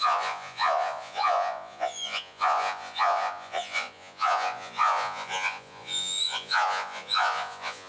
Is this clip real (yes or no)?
no